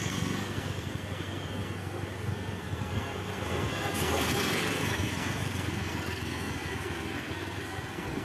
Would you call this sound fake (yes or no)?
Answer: yes